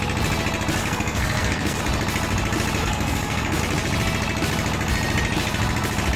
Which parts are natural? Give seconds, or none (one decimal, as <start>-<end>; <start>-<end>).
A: 0.0-0.8; 1.8-2.8; 3.6-6.2